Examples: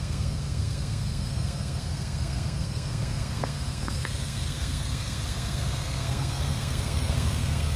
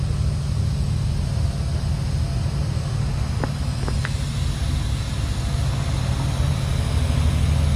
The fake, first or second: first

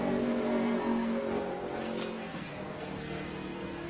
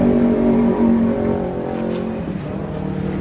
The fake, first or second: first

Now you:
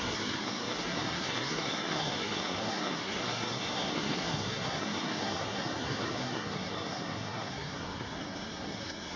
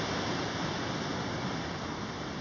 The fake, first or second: first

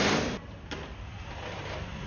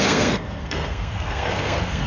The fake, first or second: second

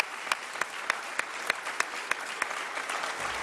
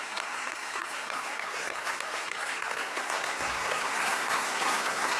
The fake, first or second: second